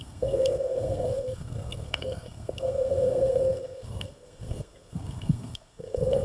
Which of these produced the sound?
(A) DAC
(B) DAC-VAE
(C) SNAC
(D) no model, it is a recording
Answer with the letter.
C